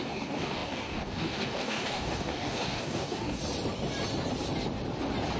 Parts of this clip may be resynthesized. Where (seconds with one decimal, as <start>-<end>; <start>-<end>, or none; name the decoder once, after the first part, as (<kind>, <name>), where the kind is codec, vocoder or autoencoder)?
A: 0.0-3.4 (codec, DAC)